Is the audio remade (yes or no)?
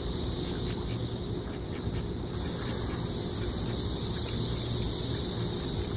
no